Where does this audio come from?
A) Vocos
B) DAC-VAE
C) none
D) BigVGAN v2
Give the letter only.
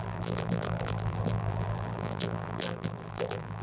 D